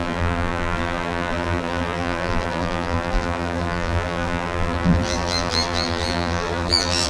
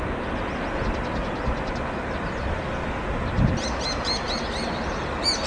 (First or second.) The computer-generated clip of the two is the first